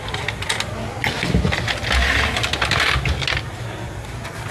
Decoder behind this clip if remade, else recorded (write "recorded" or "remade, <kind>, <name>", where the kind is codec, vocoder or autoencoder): recorded